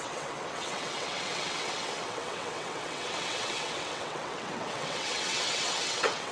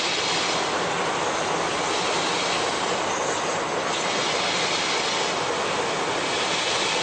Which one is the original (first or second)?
second